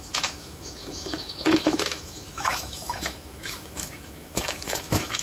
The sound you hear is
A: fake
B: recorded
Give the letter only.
A